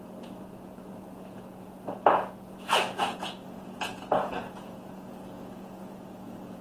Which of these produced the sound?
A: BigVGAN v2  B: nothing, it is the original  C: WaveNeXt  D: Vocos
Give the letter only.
D